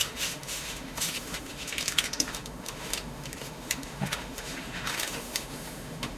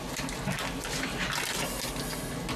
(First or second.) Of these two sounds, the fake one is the first